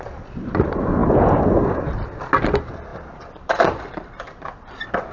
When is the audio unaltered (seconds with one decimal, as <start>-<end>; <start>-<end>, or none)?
0.0-2.9; 4.2-5.1